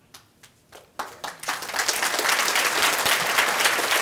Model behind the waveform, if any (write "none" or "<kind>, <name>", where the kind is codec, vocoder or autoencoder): none